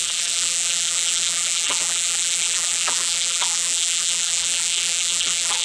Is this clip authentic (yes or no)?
no